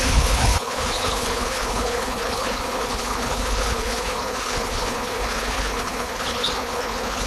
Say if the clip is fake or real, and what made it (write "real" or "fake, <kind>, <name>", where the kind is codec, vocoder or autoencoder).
fake, codec, HILCodec